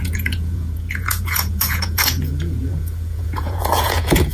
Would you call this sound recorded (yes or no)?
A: no